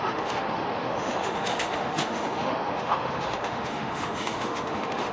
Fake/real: fake